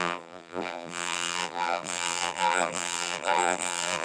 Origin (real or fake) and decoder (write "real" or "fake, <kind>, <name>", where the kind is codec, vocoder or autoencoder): fake, vocoder, BigVGAN v2